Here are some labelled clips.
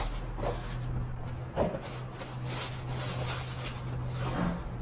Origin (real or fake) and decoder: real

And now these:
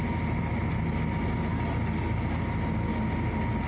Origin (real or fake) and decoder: real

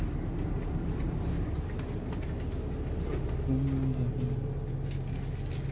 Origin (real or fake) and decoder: real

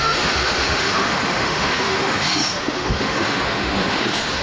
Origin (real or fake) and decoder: fake, autoencoder, DAC-VAE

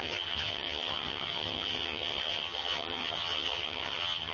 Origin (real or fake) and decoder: fake, vocoder, HiFi-GAN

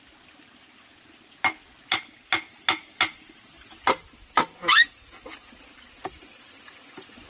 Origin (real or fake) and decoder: real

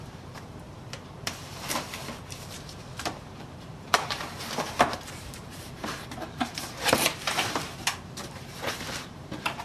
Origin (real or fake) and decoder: fake, vocoder, BigVGAN v2